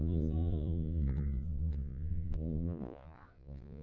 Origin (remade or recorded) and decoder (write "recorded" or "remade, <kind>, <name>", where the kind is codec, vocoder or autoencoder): remade, vocoder, Vocos